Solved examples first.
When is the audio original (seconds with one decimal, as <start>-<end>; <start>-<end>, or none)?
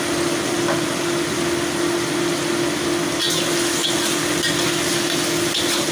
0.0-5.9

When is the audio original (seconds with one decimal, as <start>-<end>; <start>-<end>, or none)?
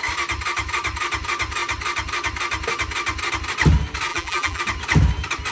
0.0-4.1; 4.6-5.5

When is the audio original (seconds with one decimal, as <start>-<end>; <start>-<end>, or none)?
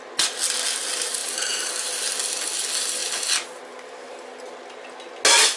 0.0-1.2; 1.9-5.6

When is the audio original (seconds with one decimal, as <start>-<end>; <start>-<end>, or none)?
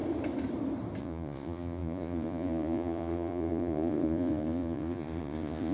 0.0-1.0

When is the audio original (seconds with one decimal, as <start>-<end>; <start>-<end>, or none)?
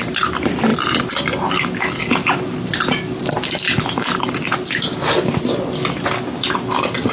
0.0-7.1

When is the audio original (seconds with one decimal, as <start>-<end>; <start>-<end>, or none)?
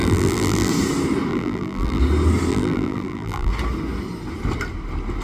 0.7-1.3; 2.0-2.5; 3.5-5.2